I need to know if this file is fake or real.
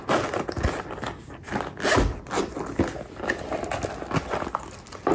real